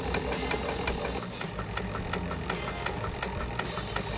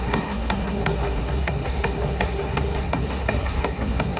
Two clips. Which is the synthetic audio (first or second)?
second